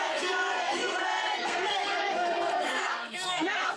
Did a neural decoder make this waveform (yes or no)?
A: yes